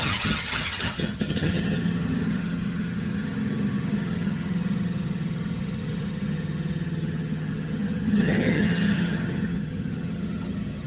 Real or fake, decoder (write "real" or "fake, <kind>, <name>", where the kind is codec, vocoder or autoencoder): fake, vocoder, HiFi-GAN